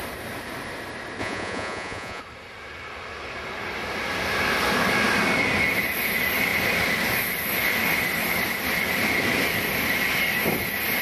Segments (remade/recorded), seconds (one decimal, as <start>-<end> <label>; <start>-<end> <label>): 0.0-1.2 recorded; 1.2-2.2 remade; 2.2-11.0 recorded